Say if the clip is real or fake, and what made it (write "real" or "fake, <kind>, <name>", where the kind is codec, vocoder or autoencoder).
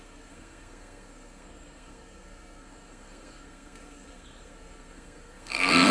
fake, codec, SNAC